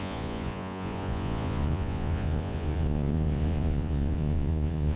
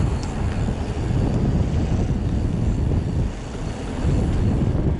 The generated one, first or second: first